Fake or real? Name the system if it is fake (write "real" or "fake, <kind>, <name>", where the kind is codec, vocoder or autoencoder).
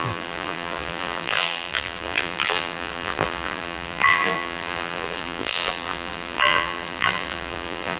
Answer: fake, vocoder, BigVGAN v2